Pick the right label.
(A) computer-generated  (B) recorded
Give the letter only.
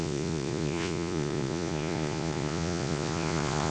A